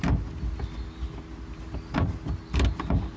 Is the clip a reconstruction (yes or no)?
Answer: no